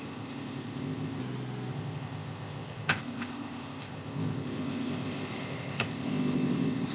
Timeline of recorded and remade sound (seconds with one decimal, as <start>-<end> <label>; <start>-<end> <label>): 0.0-1.2 remade; 1.2-1.7 recorded; 1.7-6.9 remade